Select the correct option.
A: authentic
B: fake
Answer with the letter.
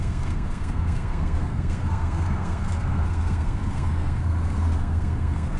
B